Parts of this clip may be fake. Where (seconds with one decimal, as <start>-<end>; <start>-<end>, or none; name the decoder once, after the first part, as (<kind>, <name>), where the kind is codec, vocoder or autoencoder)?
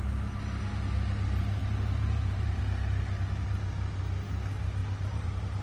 1.6-2.6 (vocoder, BigVGAN v2); 4.8-5.6